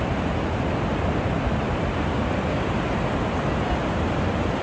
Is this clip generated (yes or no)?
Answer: no